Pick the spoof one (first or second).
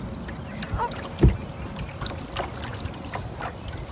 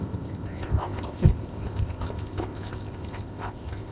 second